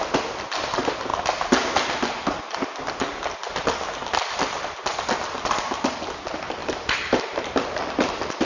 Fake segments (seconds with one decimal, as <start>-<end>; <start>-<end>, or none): 6.6-8.4